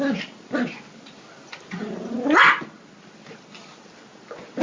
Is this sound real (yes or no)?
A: yes